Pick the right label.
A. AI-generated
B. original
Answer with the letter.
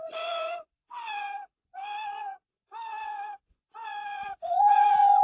A